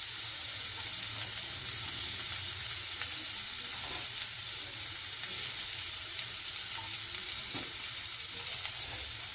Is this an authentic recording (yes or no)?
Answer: no